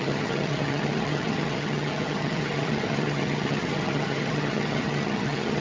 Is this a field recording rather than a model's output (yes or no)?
no